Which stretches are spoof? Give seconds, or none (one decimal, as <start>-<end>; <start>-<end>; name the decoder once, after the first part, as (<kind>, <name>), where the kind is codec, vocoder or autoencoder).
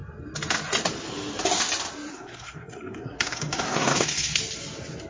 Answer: 2.1-4.4 (codec, SNAC)